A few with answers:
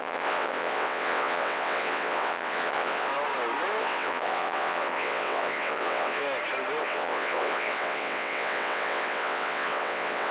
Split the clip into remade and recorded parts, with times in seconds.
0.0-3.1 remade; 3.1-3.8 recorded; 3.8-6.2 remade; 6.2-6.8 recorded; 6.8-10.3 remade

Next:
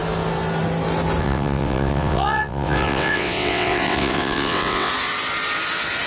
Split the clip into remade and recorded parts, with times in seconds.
0.0-1.2 recorded; 1.2-4.9 remade; 4.9-6.1 recorded

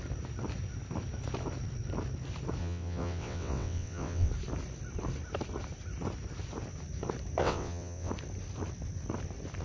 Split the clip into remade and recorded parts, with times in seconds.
0.0-2.6 recorded; 2.6-4.3 remade; 4.3-7.4 recorded; 7.4-8.1 remade; 8.1-9.6 recorded

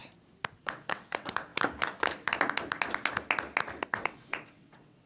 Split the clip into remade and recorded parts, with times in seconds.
0.0-0.6 recorded; 0.6-1.5 remade; 1.5-3.9 recorded; 3.9-5.1 remade

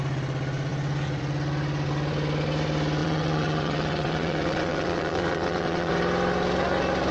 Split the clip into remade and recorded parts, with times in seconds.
0.0-3.0 recorded; 3.0-5.9 remade; 5.9-7.1 recorded

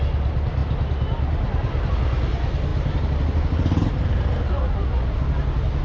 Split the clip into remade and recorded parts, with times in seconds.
0.0-5.8 recorded

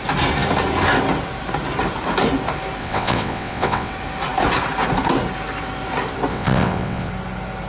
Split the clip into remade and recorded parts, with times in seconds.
0.0-2.8 recorded; 2.8-3.9 remade; 3.9-6.3 recorded; 6.3-7.1 remade; 7.1-7.7 recorded

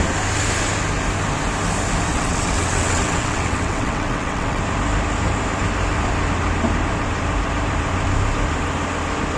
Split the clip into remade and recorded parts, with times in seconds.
0.0-2.1 recorded; 2.1-4.6 remade; 4.6-9.4 recorded